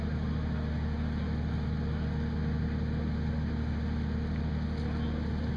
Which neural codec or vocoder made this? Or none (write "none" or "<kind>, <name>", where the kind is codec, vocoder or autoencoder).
none